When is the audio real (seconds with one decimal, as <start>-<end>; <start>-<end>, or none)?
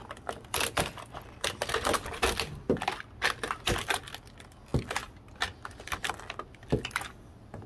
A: 0.0-7.7